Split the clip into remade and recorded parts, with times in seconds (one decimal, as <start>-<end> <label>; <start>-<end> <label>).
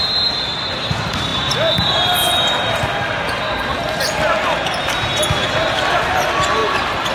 0.0-7.1 recorded